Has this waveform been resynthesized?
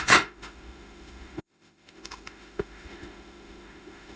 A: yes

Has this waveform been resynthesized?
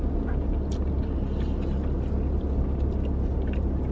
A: no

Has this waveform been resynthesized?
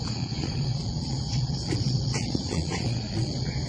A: yes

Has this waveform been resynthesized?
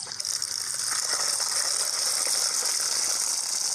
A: no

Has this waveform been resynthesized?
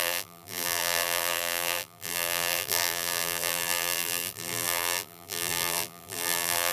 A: yes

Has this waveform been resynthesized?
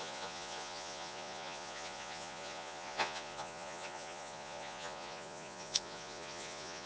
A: yes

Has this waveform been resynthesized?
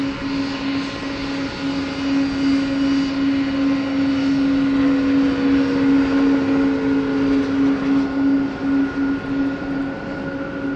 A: no